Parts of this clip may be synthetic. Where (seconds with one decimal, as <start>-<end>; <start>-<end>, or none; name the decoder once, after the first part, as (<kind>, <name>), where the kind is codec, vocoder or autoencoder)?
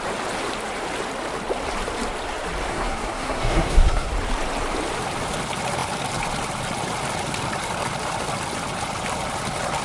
2.7-4.1 (codec, SNAC)